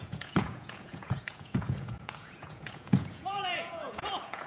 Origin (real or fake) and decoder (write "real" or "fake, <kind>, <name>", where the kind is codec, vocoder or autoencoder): fake, vocoder, Vocos